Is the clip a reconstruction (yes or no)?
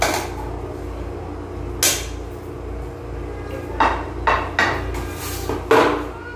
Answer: no